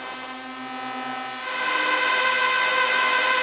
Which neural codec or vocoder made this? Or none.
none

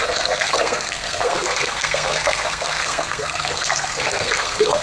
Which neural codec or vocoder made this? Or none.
codec, SNAC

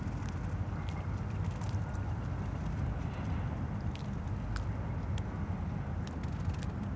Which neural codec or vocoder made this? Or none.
none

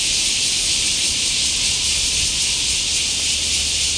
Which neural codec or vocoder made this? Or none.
none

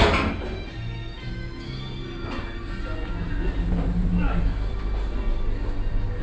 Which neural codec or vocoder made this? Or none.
none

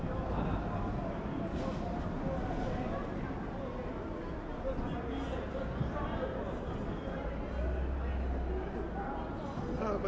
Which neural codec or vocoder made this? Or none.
none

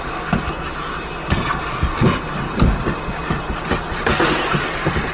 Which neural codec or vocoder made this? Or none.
none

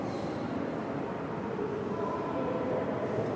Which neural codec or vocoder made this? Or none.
none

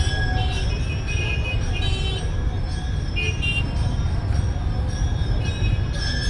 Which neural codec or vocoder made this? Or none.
none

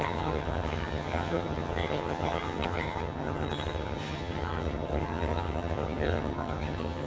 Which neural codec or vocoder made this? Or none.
vocoder, HiFi-GAN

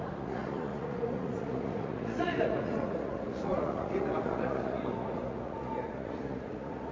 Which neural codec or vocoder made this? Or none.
vocoder, Vocos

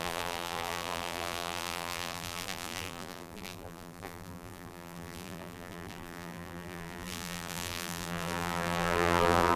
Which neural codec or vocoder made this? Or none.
vocoder, BigVGAN v2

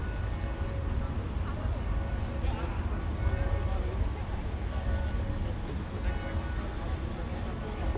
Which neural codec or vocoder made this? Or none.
none